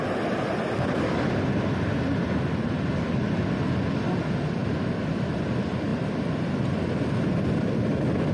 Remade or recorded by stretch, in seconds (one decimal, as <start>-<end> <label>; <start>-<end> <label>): 0.0-5.9 recorded; 5.9-6.5 remade; 6.5-8.3 recorded